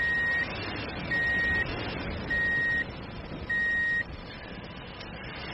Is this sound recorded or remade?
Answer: recorded